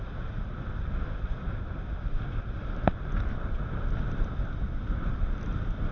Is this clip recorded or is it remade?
recorded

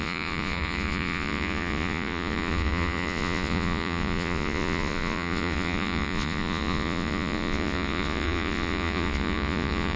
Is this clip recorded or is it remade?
remade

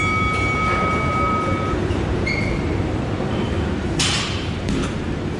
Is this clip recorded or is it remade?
remade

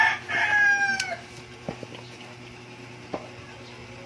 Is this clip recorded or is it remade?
recorded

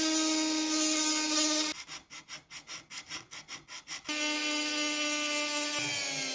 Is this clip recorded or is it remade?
recorded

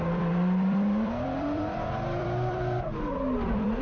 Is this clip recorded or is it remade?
remade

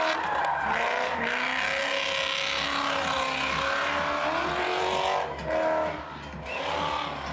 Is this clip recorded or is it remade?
recorded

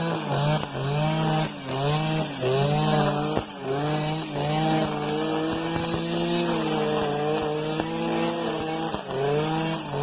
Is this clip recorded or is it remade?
recorded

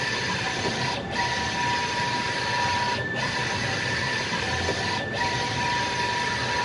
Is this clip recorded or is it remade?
recorded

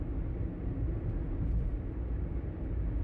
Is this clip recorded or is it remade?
recorded